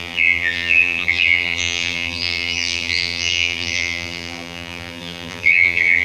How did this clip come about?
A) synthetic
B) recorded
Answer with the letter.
A